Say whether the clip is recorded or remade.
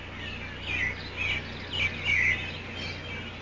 recorded